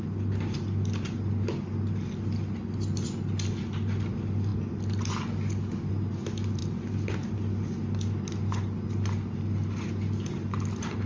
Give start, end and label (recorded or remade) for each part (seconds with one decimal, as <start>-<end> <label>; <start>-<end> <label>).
0.0-11.1 recorded